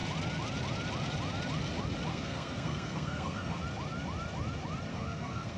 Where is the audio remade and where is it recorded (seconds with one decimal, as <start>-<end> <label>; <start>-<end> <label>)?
0.0-2.1 recorded; 2.1-3.6 remade; 3.6-4.9 recorded; 4.9-5.6 remade